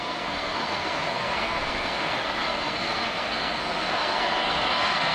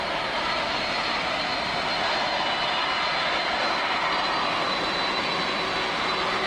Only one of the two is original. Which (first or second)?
second